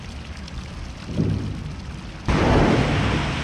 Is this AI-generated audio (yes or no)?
no